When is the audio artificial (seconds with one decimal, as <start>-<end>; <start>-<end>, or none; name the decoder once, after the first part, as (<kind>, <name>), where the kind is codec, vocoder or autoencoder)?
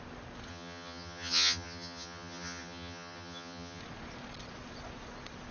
0.5-3.8 (vocoder, HiFi-GAN)